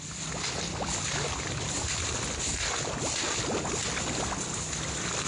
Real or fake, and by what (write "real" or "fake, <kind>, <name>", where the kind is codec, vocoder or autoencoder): real